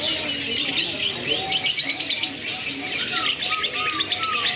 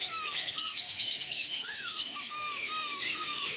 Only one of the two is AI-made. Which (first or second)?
second